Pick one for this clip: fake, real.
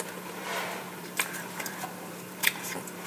fake